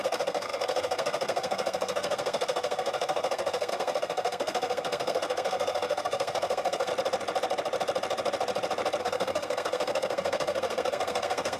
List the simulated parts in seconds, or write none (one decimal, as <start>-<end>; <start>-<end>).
0.0-6.9; 9.0-11.6